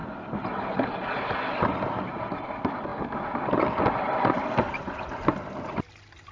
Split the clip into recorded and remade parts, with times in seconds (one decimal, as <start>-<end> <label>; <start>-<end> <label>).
0.0-6.3 recorded